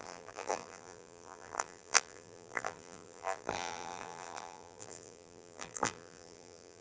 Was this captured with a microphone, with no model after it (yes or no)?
no